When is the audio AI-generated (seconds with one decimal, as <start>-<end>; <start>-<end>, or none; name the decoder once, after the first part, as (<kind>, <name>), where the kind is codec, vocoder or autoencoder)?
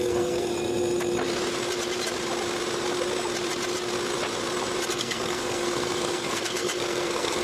0.0-0.5 (codec, SNAC); 4.9-7.4